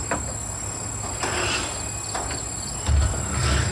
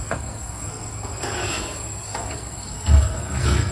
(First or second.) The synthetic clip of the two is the second